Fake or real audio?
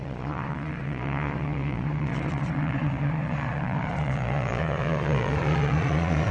fake